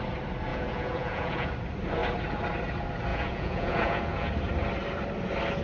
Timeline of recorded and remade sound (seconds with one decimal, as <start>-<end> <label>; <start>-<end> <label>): 0.0-0.5 recorded; 0.5-1.5 remade; 1.5-3.1 recorded; 3.1-4.3 remade; 4.3-5.6 recorded